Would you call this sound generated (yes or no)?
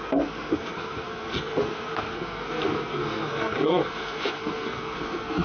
yes